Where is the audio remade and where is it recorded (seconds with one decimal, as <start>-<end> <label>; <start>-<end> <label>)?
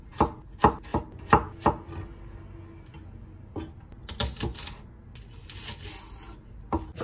0.0-7.0 recorded